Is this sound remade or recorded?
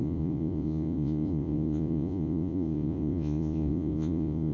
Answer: remade